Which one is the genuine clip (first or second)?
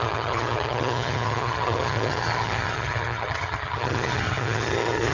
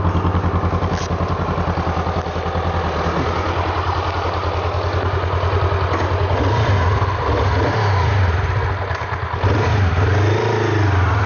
second